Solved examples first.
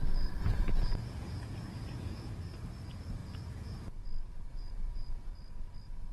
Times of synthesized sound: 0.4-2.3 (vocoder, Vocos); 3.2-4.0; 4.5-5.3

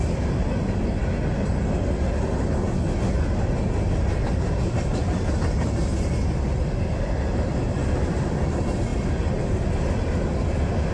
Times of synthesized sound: none

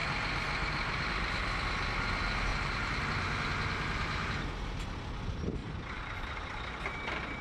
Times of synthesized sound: 0.0-1.1 (vocoder, BigVGAN v2); 2.5-3.0; 5.6-6.6

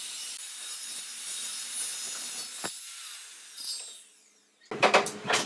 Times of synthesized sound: 0.0-1.5 (vocoder, BigVGAN v2); 4.8-5.5